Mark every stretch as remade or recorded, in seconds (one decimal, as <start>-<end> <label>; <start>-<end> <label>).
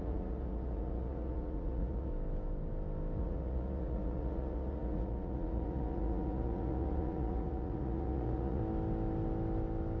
0.0-2.1 remade; 2.1-3.2 recorded; 3.2-8.6 remade; 8.6-10.0 recorded